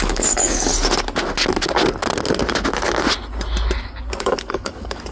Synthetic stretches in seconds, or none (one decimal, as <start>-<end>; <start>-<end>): 0.0-0.7; 3.8-5.1